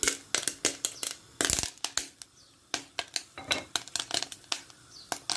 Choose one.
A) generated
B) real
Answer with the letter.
B